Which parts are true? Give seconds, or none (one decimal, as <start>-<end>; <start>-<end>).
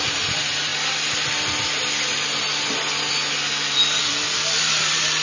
0.7-3.8